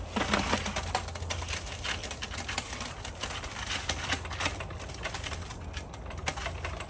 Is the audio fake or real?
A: real